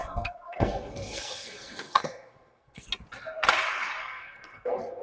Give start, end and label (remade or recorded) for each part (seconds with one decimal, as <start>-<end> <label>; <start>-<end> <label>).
0.0-2.9 remade; 2.9-4.0 recorded; 4.0-5.0 remade